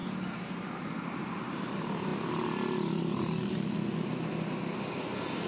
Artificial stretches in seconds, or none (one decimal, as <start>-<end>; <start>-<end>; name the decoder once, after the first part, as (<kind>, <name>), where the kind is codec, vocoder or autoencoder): none